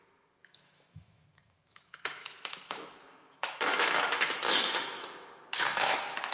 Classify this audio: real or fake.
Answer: fake